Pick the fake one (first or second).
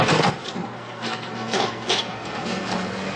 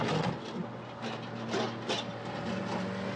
first